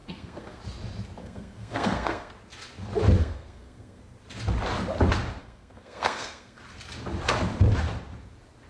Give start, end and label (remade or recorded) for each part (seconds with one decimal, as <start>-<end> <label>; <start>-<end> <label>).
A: 0.0-0.6 remade; 0.6-1.2 recorded; 1.2-2.3 remade; 2.3-3.2 recorded; 3.2-4.0 remade; 4.0-5.4 recorded; 5.4-6.6 remade; 6.6-8.7 recorded